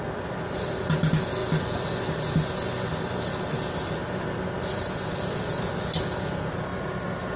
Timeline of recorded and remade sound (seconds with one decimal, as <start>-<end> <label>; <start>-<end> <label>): 0.0-6.7 recorded; 6.7-7.4 remade